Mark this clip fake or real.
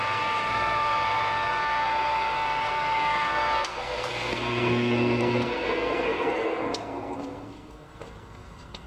fake